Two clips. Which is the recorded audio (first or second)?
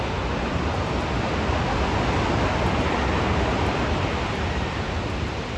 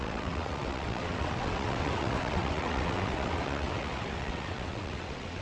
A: first